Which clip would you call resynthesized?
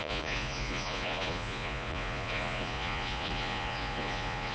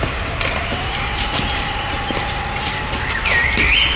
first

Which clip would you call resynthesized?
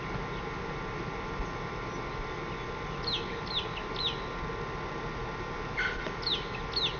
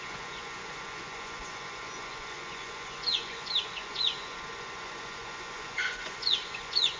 second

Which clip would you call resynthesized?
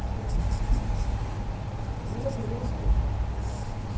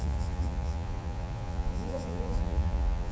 second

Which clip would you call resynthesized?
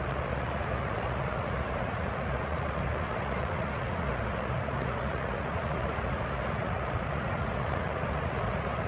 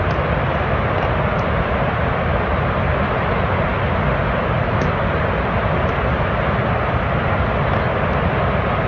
first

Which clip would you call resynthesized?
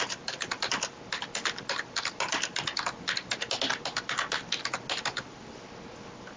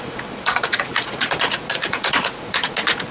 second